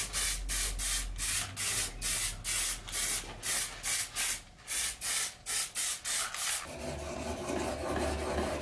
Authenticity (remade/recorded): recorded